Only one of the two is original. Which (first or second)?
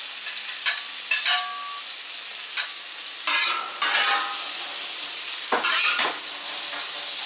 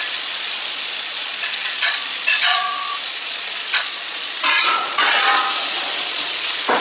first